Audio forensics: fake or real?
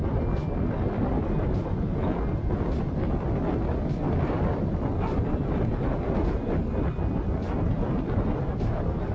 real